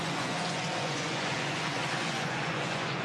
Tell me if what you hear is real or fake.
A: fake